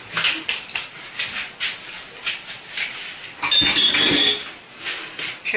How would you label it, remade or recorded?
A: recorded